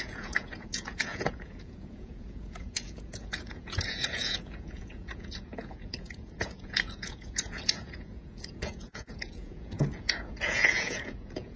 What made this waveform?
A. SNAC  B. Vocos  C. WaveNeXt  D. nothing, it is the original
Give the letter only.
B